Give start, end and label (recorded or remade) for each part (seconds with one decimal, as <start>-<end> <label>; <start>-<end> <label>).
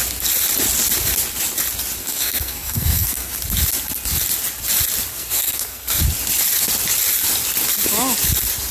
0.0-2.0 recorded; 2.0-3.3 remade; 3.3-5.1 recorded; 5.1-6.0 remade; 6.0-8.7 recorded